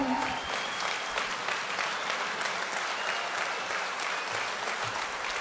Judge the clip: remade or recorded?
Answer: recorded